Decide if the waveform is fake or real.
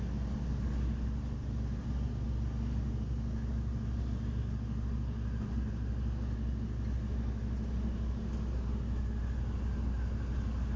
real